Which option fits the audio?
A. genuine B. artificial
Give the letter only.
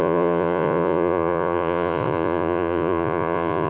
B